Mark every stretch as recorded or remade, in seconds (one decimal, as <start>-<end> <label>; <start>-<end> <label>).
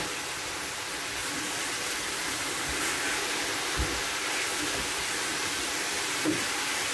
0.0-1.2 recorded; 1.2-4.2 remade; 4.2-5.9 recorded; 5.9-6.9 remade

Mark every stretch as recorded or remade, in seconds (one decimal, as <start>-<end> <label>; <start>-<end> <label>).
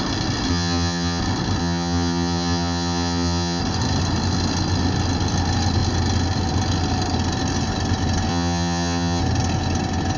0.0-0.5 recorded; 0.5-1.2 remade; 1.2-1.6 recorded; 1.6-3.6 remade; 3.6-8.3 recorded; 8.3-9.2 remade; 9.2-10.2 recorded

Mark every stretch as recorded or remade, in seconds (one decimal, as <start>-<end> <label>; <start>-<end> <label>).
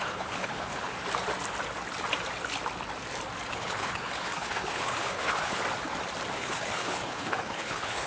0.0-0.9 remade; 0.9-3.5 recorded; 3.5-5.6 remade; 5.6-6.3 recorded; 6.3-8.1 remade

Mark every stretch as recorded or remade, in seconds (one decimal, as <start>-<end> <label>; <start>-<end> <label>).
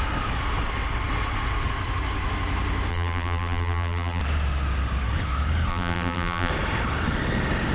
0.0-2.9 recorded; 2.9-4.2 remade; 4.2-5.7 recorded; 5.7-6.5 remade; 6.5-7.7 recorded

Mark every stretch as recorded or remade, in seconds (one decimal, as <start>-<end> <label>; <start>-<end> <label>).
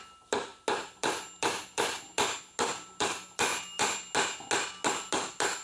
0.0-5.6 recorded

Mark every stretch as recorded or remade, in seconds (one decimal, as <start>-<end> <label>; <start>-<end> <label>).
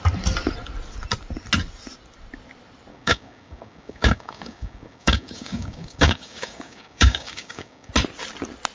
0.0-2.9 recorded; 2.9-7.9 remade; 7.9-8.7 recorded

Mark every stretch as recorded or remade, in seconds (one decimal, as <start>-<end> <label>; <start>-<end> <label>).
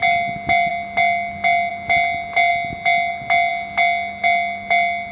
0.0-5.1 recorded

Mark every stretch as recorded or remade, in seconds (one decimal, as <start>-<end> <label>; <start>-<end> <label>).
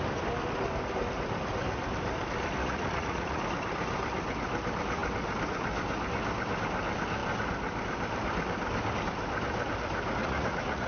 0.0-2.6 recorded; 2.6-3.4 remade; 3.4-10.2 recorded; 10.2-10.9 remade